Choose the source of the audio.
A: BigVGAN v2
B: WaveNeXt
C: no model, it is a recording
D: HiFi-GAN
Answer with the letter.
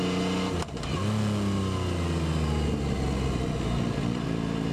C